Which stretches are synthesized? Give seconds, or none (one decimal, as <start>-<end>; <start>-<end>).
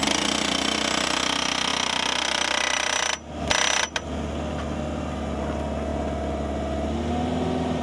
none